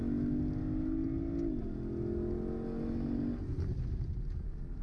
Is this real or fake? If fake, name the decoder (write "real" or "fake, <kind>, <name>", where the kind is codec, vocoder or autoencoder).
real